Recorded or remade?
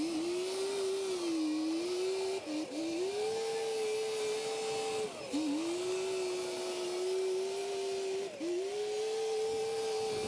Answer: recorded